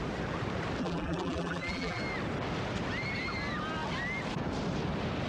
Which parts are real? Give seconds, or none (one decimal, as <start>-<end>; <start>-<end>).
0.0-0.8; 2.0-5.3